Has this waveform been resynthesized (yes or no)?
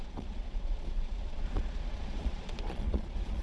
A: yes